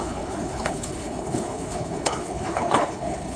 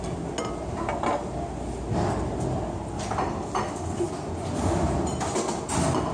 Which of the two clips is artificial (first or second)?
first